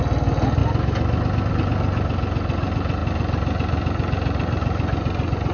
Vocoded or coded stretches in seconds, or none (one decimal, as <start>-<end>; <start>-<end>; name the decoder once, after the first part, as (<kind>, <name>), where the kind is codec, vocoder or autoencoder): none